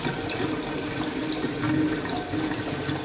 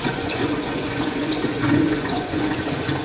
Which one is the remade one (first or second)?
second